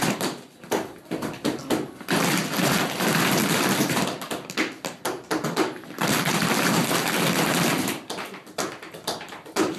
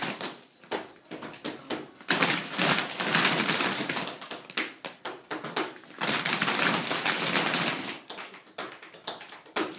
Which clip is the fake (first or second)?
first